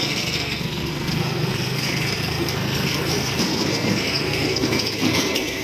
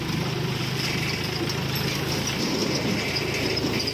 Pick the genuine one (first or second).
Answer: second